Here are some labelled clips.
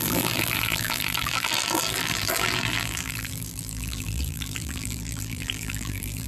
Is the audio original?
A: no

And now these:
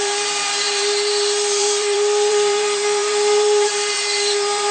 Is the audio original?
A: no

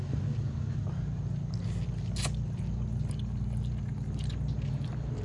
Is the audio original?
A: yes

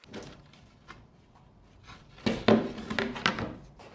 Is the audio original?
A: yes